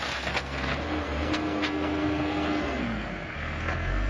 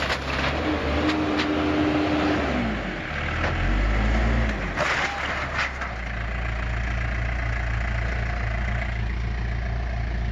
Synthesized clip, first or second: first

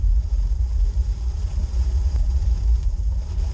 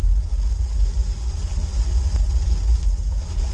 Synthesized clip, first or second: first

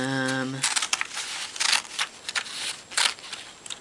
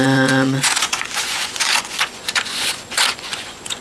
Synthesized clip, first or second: second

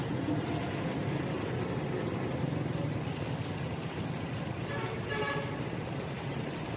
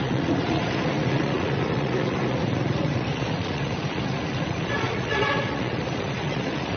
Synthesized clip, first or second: second